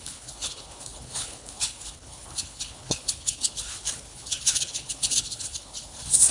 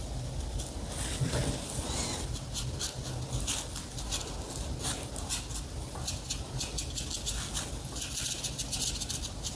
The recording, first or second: second